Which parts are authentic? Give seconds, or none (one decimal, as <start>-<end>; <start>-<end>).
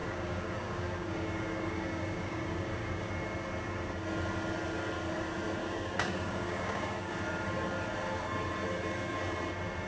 3.1-5.6; 7.1-9.9